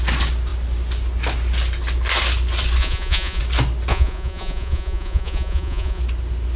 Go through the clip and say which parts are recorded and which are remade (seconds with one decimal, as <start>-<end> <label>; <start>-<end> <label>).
0.0-2.8 recorded; 2.8-3.4 remade; 3.4-3.9 recorded; 3.9-6.0 remade; 6.0-6.6 recorded